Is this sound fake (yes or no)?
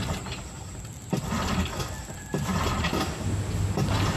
no